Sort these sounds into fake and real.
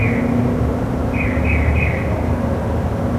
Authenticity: real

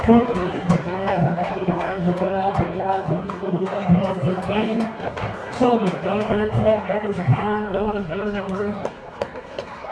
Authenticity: fake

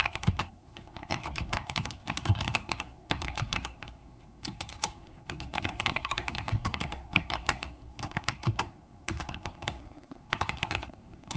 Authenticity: fake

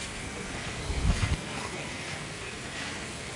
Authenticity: fake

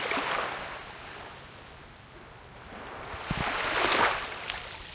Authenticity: real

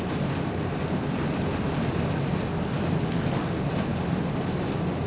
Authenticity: real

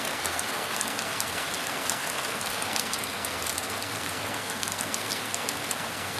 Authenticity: fake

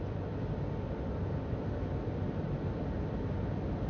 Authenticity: real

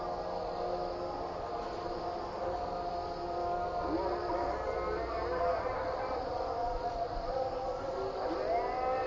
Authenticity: real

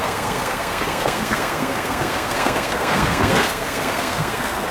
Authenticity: fake